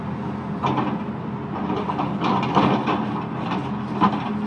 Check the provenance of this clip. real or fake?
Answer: real